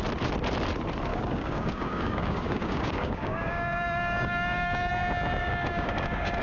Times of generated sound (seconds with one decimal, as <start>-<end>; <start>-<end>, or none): 1.1-4.9; 5.4-6.4